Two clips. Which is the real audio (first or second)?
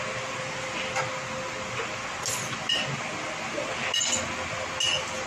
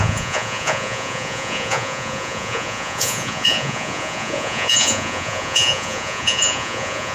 first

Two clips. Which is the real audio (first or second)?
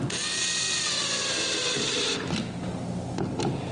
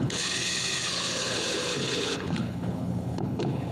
first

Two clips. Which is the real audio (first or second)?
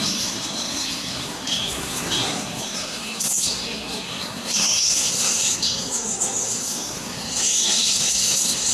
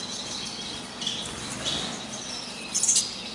second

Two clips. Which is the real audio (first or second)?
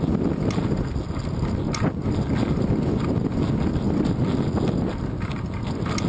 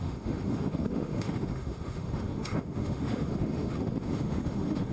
first